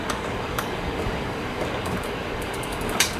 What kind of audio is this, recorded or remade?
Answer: remade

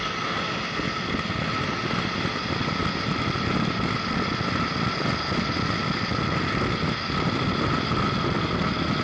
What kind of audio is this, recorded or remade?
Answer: recorded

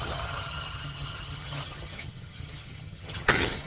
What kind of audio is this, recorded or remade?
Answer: remade